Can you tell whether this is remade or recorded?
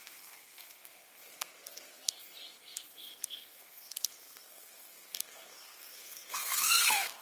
remade